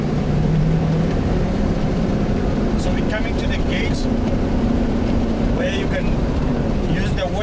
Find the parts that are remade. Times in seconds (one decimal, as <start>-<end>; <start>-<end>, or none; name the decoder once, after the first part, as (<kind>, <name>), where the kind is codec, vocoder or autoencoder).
0.0-2.1 (vocoder, BigVGAN v2); 4.6-6.5